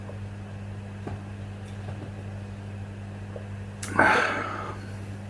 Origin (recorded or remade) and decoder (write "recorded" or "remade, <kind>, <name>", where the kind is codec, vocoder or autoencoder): recorded